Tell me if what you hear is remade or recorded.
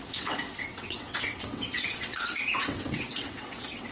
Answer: remade